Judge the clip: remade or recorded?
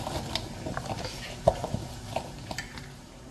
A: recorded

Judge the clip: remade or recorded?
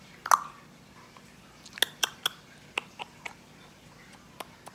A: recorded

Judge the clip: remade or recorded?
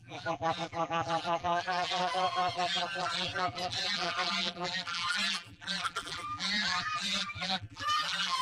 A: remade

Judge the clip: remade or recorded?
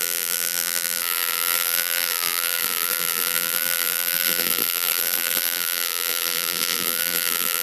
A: remade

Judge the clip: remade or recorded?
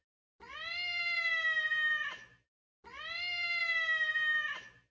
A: recorded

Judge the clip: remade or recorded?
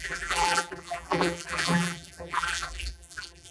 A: remade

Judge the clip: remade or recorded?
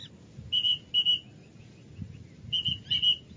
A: recorded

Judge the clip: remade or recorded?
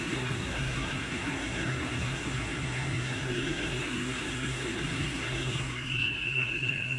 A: remade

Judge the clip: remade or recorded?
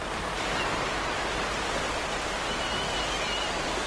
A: recorded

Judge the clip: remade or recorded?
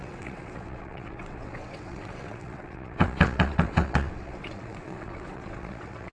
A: remade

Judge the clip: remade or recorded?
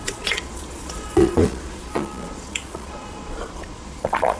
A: remade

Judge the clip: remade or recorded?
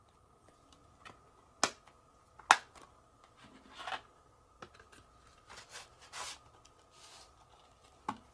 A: recorded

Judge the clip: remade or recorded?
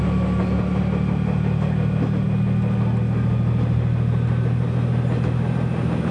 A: recorded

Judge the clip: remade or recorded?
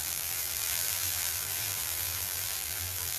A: remade